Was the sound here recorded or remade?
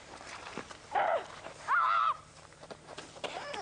remade